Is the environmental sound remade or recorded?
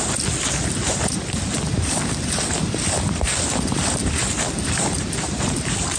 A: recorded